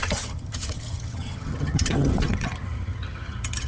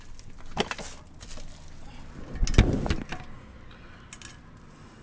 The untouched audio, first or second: second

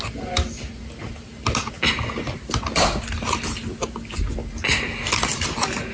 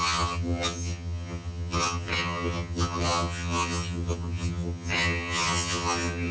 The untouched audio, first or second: first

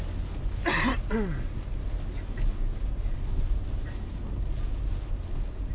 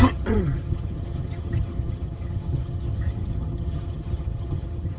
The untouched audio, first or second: first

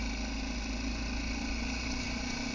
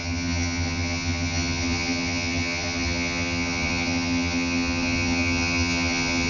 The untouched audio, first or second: first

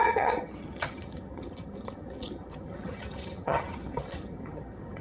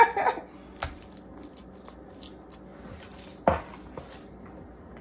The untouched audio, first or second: second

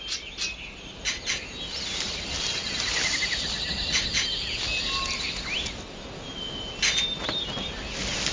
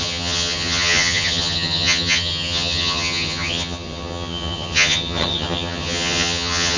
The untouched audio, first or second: first